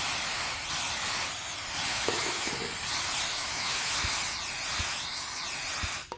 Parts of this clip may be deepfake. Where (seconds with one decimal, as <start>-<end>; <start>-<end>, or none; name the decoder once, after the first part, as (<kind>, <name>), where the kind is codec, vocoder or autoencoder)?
1.9-2.5 (autoencoder, DAC-VAE); 3.3-3.9